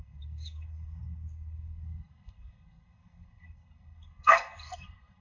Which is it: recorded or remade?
remade